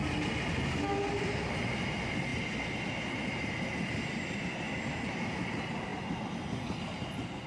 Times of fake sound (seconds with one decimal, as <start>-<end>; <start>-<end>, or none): 2.3-4.4